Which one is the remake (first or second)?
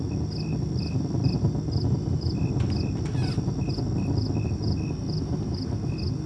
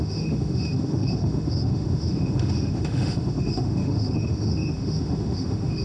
second